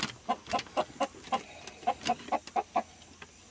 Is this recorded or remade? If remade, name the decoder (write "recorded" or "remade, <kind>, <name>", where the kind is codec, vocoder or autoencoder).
recorded